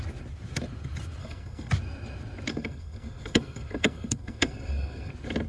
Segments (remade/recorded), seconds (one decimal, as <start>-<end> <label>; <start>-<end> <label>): 0.0-1.2 recorded; 1.2-1.7 remade; 1.7-2.5 recorded; 2.5-5.1 remade; 5.1-5.5 recorded